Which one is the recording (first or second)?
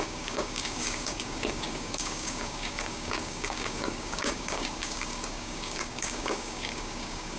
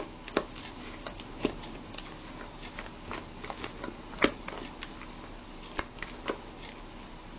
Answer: second